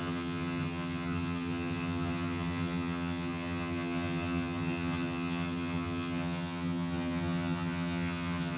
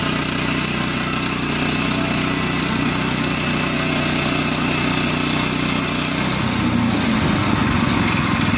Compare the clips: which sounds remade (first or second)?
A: first